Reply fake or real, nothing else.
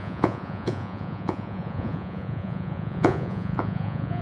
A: fake